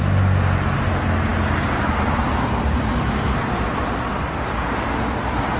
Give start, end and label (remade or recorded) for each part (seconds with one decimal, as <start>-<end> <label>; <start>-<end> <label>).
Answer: 0.0-5.6 recorded